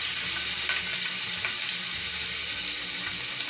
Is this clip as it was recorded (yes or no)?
yes